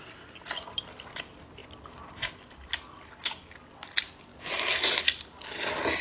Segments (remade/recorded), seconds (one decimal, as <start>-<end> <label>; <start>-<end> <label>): 0.0-6.0 recorded